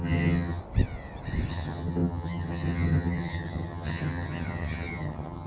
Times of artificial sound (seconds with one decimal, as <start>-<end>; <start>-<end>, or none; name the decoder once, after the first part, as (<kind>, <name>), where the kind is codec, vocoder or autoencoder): 0.0-0.6 (vocoder, HiFi-GAN); 1.5-5.5